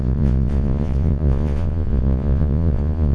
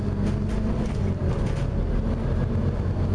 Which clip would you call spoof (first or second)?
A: first